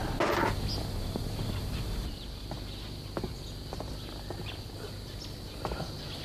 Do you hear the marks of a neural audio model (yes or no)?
no